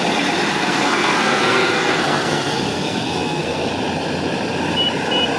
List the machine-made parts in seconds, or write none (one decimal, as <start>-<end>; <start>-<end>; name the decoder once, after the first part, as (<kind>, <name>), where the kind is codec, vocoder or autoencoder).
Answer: 0.5-3.7 (codec, SNAC)

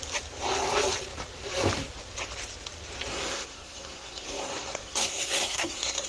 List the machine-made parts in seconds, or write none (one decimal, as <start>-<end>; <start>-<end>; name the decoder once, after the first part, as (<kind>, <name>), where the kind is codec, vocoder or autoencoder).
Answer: 3.1-6.1 (codec, SNAC)

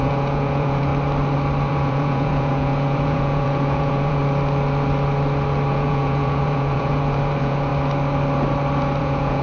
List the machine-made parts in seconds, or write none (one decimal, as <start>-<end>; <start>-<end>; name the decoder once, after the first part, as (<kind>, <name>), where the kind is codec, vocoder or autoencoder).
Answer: 0.0-0.9 (vocoder, Vocos); 1.7-4.2; 5.7-7.7; 9.0-9.4

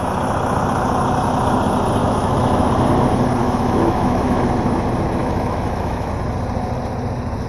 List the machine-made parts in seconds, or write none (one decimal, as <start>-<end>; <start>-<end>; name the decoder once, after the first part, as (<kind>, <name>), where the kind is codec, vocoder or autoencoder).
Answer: 2.0-2.7 (autoencoder, DAC-VAE); 3.4-4.4; 5.2-6.1

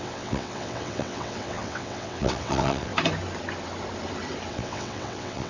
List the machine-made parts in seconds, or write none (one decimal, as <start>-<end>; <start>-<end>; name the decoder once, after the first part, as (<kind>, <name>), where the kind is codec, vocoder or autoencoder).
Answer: 0.0-2.9 (vocoder, WaveNeXt); 4.5-5.5

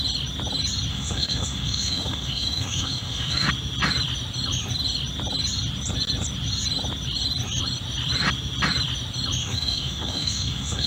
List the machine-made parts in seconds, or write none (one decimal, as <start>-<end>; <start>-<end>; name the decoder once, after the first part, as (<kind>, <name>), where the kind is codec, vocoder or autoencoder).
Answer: 0.9-3.5 (autoencoder, DAC-VAE); 9.4-10.9